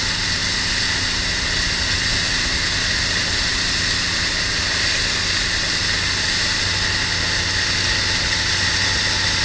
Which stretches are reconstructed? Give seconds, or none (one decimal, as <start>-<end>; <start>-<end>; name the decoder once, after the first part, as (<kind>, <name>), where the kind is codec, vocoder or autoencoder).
none